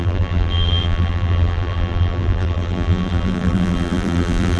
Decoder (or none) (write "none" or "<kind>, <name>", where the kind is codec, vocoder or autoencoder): vocoder, BigVGAN v2